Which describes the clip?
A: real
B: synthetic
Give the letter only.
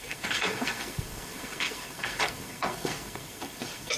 B